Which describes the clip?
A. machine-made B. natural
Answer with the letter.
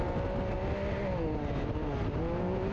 B